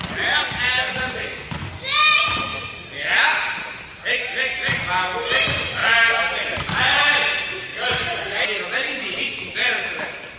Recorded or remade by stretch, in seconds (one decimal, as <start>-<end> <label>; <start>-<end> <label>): 0.0-5.8 recorded; 5.8-6.8 remade; 6.8-7.7 recorded; 7.7-10.4 remade